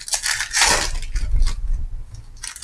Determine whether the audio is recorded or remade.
recorded